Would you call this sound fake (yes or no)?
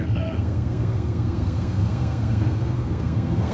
yes